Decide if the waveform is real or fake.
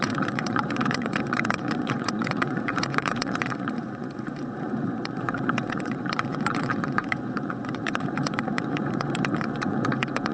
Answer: fake